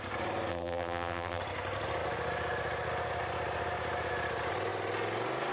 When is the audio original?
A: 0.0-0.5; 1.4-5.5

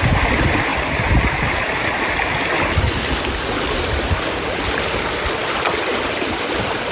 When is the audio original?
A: 0.0-6.9

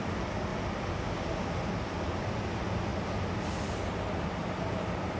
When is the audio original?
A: 2.9-4.2